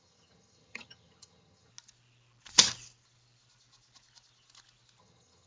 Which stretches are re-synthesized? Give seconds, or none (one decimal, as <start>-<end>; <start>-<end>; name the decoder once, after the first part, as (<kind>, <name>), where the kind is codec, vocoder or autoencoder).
0.0-1.7 (vocoder, HiFi-GAN); 5.0-5.5